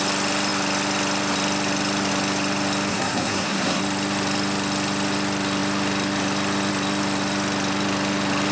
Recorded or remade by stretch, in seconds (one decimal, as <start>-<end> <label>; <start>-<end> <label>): 0.0-2.9 recorded; 2.9-3.8 remade; 3.8-8.5 recorded